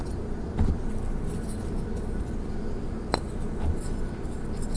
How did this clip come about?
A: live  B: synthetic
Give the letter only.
A